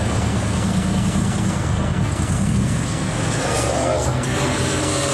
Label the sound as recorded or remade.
remade